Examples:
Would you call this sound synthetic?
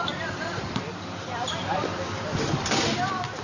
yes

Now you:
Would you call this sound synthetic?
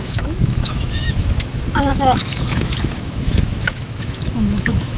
yes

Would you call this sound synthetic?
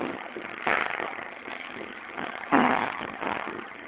yes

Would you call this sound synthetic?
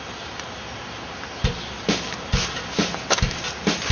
no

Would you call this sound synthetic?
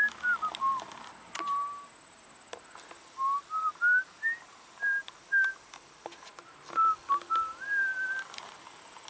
no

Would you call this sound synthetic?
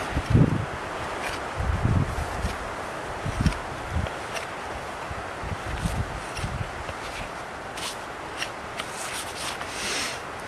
no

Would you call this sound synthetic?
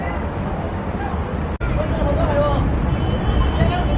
no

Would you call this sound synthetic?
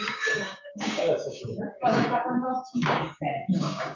yes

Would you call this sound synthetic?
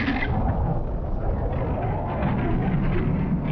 no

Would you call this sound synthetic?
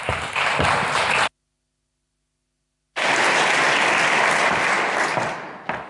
no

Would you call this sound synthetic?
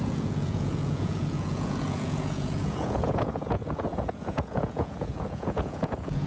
yes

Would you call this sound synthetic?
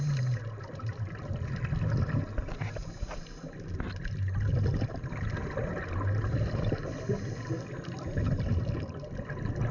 no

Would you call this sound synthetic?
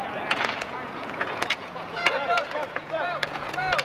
yes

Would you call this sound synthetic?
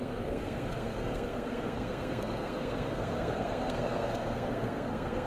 yes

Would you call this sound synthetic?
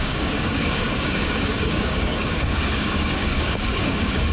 yes